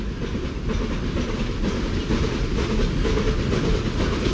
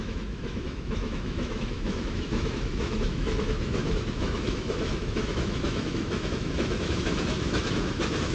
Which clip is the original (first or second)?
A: first